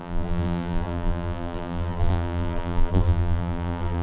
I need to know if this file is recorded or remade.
remade